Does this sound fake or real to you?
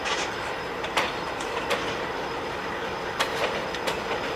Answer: real